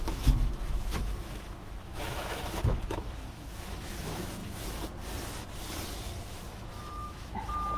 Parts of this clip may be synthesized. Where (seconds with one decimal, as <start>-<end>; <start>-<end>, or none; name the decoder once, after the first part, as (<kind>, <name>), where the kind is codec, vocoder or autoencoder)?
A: 0.0-4.4 (autoencoder, DAC-VAE); 6.1-7.8